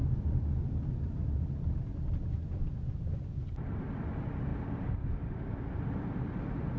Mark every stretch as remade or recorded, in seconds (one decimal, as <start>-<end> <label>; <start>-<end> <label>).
0.0-1.9 recorded; 1.9-4.0 remade; 4.0-4.5 recorded; 4.5-5.9 remade; 5.9-6.8 recorded